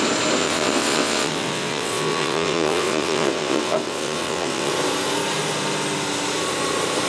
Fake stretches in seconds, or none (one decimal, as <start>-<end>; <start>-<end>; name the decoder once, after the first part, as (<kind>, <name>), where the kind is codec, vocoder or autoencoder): 0.4-4.7 (vocoder, WaveNeXt)